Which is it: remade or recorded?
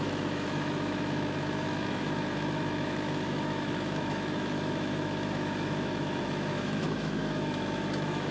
remade